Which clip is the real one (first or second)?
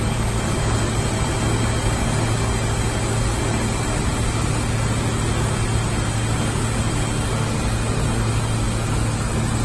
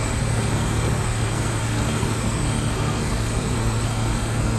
first